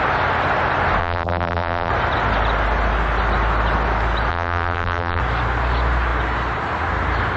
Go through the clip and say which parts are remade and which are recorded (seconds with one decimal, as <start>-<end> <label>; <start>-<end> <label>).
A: 0.0-1.0 recorded; 1.0-1.9 remade; 1.9-4.3 recorded; 4.3-5.2 remade; 5.2-7.4 recorded